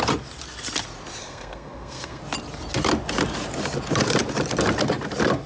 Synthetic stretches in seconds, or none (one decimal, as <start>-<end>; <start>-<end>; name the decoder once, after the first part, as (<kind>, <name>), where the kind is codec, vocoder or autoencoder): 1.2-2.2 (codec, SNAC)